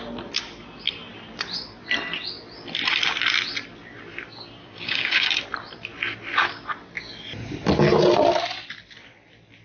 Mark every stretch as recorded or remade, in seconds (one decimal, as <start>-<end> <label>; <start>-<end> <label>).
0.0-4.6 recorded; 4.6-5.3 remade; 5.3-9.6 recorded

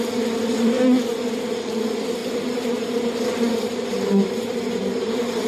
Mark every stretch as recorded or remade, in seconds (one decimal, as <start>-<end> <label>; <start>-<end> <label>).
0.0-2.2 recorded; 2.2-5.5 remade

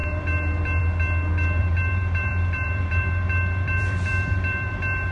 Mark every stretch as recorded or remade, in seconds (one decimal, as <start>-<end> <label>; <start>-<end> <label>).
0.0-0.8 remade; 0.8-1.6 recorded; 1.6-5.1 remade

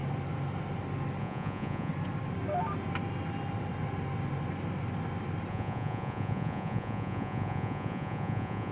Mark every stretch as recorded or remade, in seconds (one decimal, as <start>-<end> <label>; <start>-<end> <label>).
0.0-1.2 recorded; 1.2-1.9 remade; 1.9-5.5 recorded; 5.5-8.7 remade